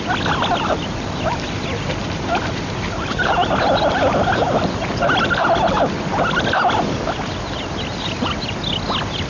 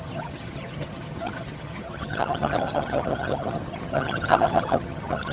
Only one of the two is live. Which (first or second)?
first